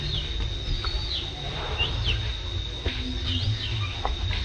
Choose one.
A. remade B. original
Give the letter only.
B